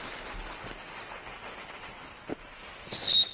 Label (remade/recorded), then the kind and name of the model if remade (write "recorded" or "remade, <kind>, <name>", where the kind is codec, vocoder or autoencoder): recorded